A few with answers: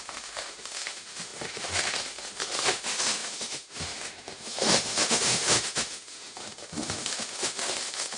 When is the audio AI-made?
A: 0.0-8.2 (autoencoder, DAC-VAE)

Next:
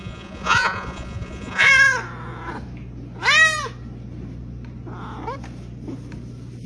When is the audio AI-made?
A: 0.0-1.7 (vocoder, Vocos)

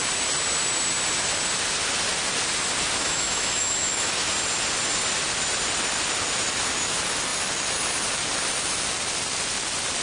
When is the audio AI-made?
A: 3.0-4.3 (autoencoder, DAC-VAE)

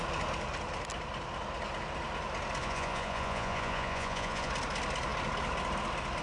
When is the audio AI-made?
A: 2.6-4.5 (vocoder, Vocos)

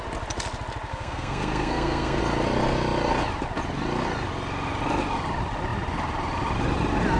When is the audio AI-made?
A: 0.9-2.2 (codec, SNAC)

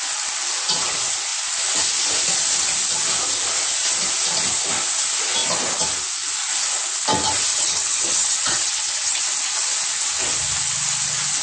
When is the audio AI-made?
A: 7.5-9.2 (vocoder, HiFi-GAN)

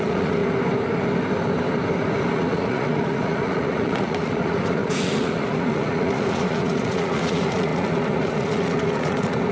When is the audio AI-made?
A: 0.0-0.4 (vocoder, Vocos); 2.3-9.5